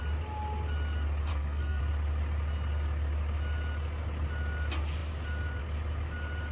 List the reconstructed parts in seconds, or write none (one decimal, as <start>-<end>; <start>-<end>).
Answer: 1.3-1.8